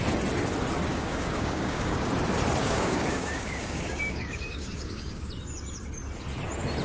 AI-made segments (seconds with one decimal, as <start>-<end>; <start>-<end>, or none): 0.9-2.1; 2.6-5.3